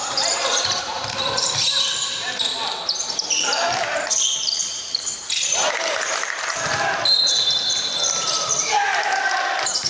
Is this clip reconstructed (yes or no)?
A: yes